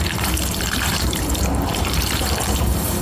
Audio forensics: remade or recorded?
remade